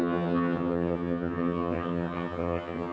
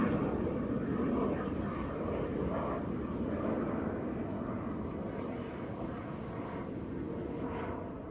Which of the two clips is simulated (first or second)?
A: first